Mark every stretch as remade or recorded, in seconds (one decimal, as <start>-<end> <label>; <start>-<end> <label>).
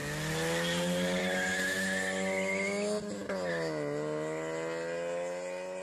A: 0.0-5.8 recorded